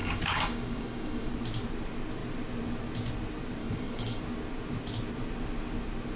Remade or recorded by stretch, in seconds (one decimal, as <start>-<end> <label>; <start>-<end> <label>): 0.0-1.3 remade; 1.3-3.6 recorded; 3.6-4.2 remade; 4.2-6.2 recorded